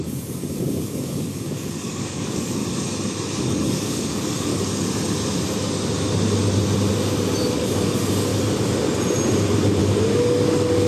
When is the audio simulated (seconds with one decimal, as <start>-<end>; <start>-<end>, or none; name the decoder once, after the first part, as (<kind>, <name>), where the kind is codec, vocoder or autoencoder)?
0.0-2.6 (codec, DAC); 3.4-4.5; 7.4-8.3; 9.8-10.9